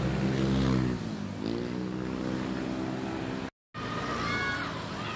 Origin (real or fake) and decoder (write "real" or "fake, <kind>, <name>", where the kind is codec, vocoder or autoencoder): real